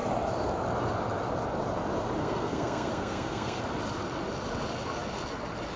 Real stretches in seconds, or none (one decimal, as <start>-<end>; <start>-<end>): 0.0-2.2; 3.6-5.8